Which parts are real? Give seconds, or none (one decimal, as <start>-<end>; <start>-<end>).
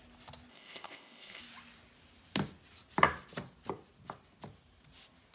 0.0-0.5; 1.4-5.3